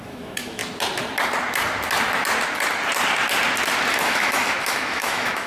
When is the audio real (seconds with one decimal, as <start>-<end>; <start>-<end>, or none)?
0.6-3.9